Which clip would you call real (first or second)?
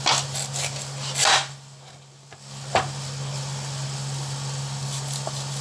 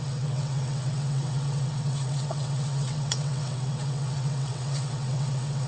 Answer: first